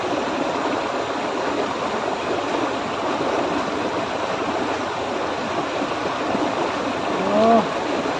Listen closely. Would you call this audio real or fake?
real